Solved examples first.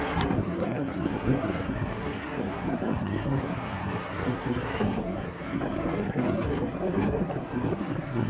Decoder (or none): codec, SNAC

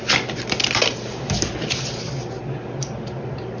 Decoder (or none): none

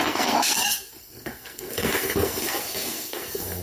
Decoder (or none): codec, SNAC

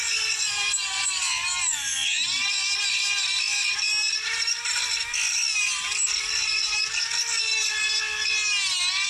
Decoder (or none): none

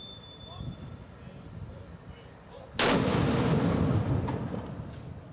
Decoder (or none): none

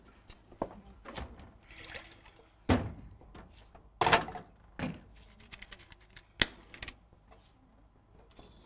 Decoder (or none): none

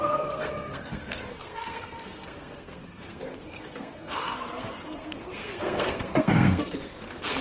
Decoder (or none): codec, SNAC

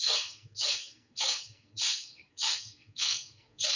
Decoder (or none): codec, SNAC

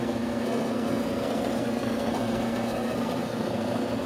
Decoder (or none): codec, SNAC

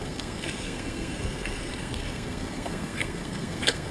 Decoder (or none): codec, SNAC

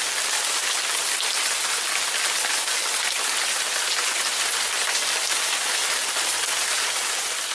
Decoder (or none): none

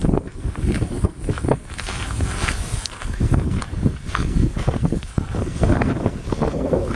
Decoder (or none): codec, SNAC